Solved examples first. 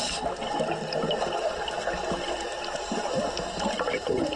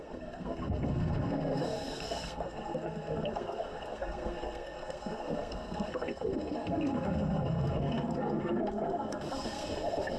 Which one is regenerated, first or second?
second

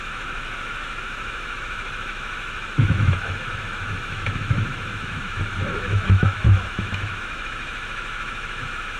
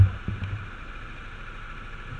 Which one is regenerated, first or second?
first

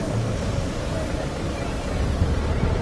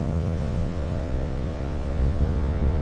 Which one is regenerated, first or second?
second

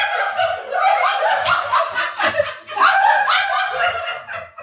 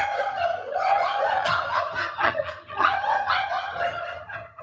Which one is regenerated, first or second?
second